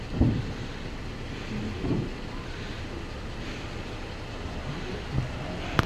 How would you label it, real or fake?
real